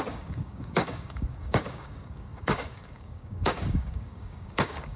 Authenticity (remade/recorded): remade